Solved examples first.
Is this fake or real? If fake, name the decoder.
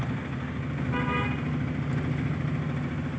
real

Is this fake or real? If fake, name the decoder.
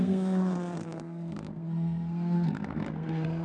fake, codec, SNAC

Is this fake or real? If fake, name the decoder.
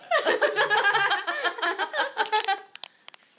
real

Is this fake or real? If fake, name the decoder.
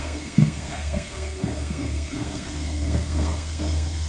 fake, codec, SNAC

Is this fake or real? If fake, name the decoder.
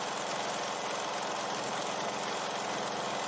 real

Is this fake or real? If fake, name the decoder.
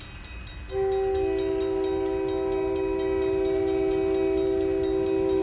real